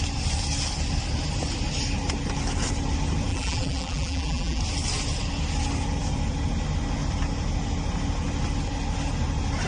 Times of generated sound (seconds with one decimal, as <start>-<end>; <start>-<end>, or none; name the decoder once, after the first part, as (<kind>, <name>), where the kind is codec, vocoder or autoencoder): 3.3-4.6 (vocoder, BigVGAN v2)